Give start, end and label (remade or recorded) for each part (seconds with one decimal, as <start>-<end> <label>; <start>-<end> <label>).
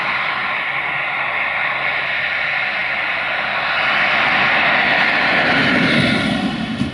0.0-6.9 recorded